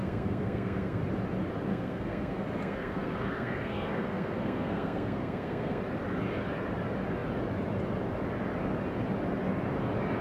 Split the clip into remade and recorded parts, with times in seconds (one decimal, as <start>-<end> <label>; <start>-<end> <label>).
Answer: 0.0-1.0 remade; 1.0-1.7 recorded; 1.7-5.8 remade; 5.8-10.2 recorded